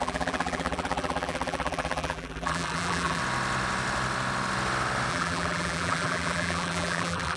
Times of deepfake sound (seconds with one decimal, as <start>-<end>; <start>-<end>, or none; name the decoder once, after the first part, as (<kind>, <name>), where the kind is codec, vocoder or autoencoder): 0.0-3.2 (vocoder, BigVGAN v2); 5.1-7.4